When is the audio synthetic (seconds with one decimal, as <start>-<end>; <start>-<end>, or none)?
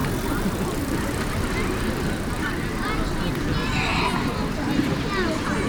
none